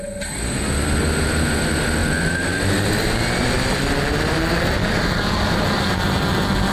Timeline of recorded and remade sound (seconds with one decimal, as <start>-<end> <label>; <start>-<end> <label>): 0.0-6.7 recorded